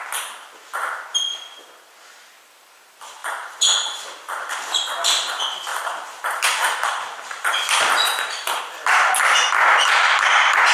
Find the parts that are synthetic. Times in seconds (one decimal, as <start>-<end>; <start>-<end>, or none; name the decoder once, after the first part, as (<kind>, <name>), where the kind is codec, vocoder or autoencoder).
3.2-4.5 (vocoder, BigVGAN v2); 5.7-8.6